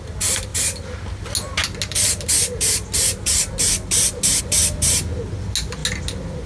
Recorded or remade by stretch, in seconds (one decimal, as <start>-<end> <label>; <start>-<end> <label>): 0.0-6.5 recorded